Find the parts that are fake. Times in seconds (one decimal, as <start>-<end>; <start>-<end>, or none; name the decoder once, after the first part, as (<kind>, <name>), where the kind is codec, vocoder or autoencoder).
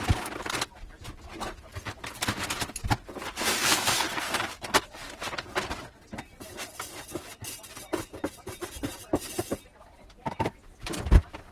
3.6-4.4 (codec, SNAC)